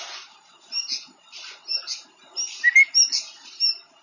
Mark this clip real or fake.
real